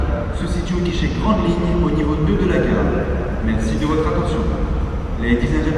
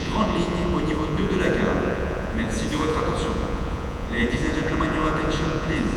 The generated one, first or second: second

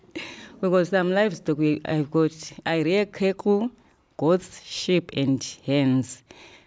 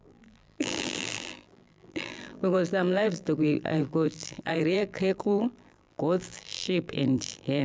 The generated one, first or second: second